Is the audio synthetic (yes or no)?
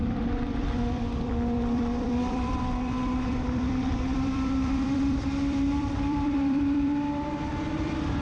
yes